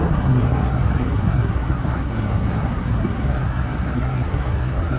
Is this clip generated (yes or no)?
yes